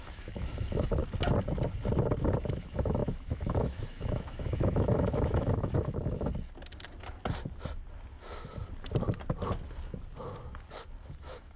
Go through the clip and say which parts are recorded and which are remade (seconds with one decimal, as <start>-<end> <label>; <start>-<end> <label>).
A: 0.0-1.0 remade; 1.0-2.4 recorded; 2.4-6.3 remade; 6.3-11.0 recorded; 11.0-11.6 remade